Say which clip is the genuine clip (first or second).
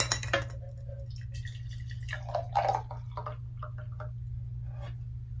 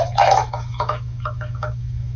first